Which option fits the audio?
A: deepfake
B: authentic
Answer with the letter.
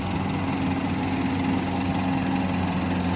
B